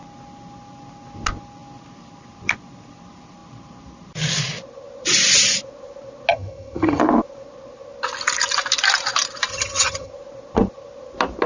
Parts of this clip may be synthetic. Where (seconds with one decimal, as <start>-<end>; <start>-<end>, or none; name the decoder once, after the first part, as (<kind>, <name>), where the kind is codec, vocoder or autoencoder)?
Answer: 6.3-7.0 (vocoder, HiFi-GAN); 9.5-10.1